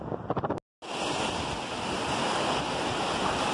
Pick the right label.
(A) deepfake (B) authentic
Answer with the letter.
B